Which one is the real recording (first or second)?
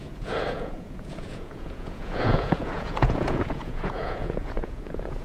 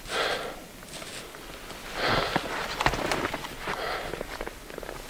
second